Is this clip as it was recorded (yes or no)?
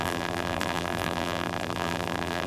no